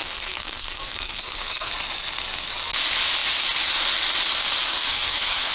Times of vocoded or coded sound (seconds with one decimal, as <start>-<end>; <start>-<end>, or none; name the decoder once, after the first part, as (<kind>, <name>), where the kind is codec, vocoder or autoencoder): 0.0-1.7 (codec, SNAC); 4.6-5.5